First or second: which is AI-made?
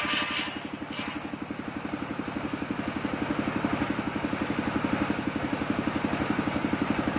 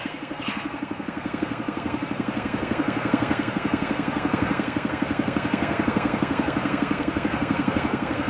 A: second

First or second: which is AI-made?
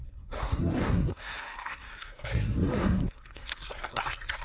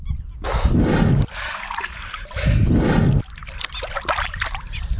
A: first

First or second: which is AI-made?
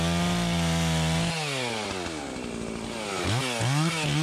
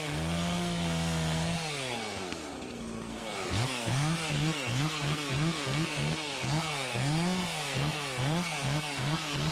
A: second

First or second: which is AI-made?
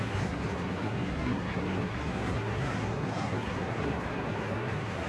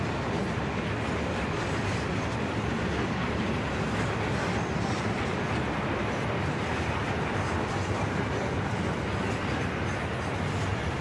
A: first